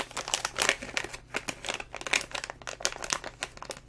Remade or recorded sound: recorded